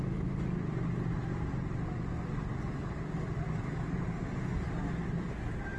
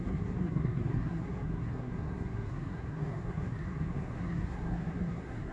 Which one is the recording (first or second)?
first